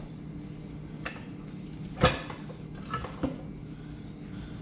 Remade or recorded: recorded